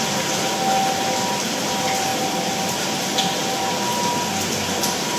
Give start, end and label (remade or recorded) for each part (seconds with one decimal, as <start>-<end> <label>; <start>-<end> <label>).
0.0-5.2 recorded

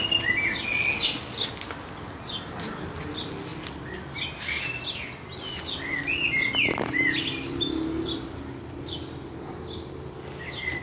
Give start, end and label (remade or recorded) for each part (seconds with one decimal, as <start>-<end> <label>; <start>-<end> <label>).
0.0-10.8 recorded

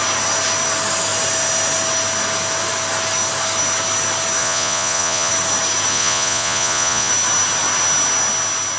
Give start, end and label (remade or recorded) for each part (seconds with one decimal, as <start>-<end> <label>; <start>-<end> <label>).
0.0-4.4 recorded; 4.4-5.3 remade; 5.3-5.9 recorded; 5.9-7.1 remade; 7.1-8.8 recorded

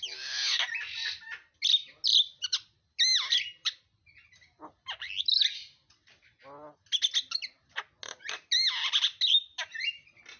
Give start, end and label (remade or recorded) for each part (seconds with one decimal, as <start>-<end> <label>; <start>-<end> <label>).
0.0-10.4 recorded

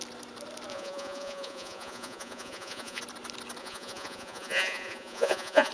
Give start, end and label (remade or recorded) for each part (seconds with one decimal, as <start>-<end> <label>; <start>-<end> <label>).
0.0-0.7 recorded; 0.7-3.0 remade; 3.0-3.6 recorded; 3.6-5.7 remade